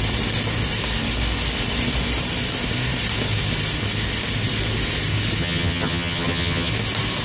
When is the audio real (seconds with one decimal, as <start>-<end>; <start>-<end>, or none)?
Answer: 0.0-5.4; 6.7-7.2